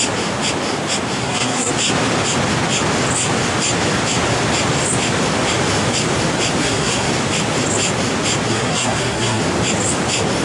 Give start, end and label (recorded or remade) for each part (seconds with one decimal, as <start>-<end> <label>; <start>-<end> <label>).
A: 0.0-1.2 recorded; 1.2-1.7 remade; 1.7-6.6 recorded; 6.6-7.1 remade; 7.1-8.5 recorded; 8.5-9.4 remade; 9.4-10.4 recorded